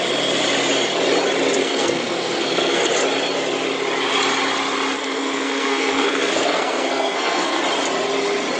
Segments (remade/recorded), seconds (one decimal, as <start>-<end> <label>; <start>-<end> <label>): 0.0-1.6 recorded; 1.6-2.9 remade; 2.9-5.0 recorded; 5.0-7.6 remade; 7.6-8.6 recorded